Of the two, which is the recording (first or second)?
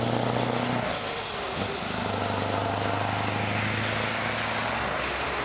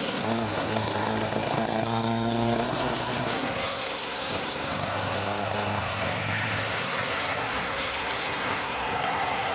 first